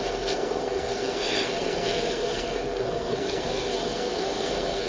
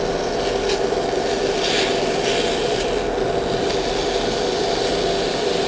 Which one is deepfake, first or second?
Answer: first